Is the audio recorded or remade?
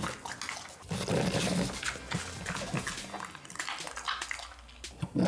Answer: recorded